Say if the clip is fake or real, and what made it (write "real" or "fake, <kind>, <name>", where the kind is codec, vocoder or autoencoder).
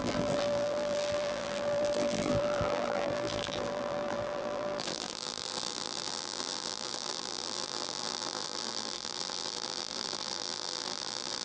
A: fake, vocoder, BigVGAN v2